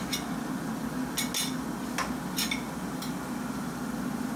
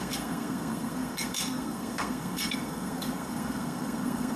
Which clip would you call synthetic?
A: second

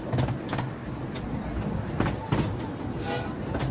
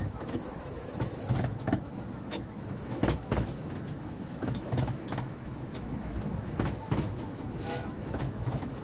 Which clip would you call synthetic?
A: second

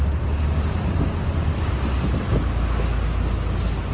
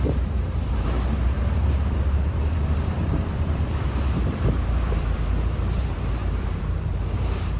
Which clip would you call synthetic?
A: second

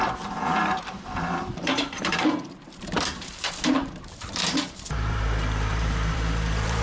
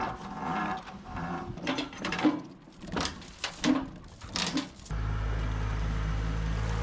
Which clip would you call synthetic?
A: first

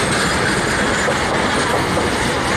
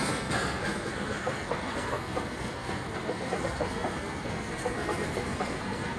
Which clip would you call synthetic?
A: second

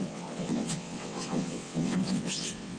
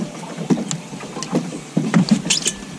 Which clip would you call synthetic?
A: first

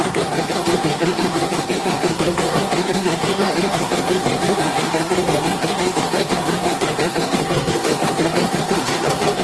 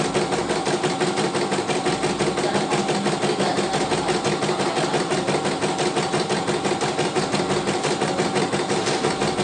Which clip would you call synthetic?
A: first